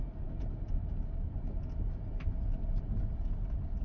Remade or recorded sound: remade